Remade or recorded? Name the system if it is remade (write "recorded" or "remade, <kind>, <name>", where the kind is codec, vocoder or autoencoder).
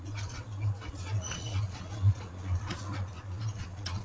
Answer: remade, vocoder, Vocos